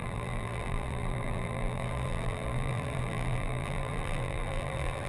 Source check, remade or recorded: remade